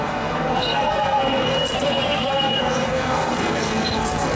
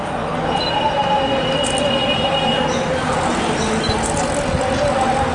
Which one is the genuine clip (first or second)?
second